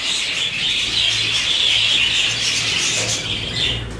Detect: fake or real real